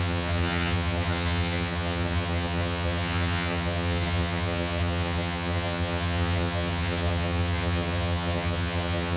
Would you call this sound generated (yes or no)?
yes